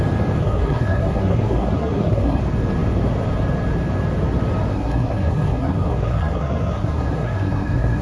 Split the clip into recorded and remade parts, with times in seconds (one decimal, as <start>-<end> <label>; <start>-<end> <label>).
0.0-0.4 recorded; 0.4-2.4 remade; 2.4-4.7 recorded; 4.7-8.0 remade

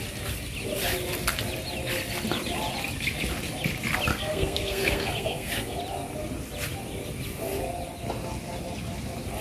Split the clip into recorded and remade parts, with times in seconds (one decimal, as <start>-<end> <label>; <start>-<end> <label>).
0.0-4.1 recorded; 4.1-5.8 remade; 5.8-9.4 recorded